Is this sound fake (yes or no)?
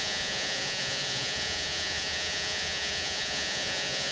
yes